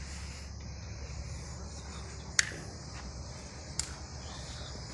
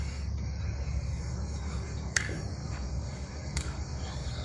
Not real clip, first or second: second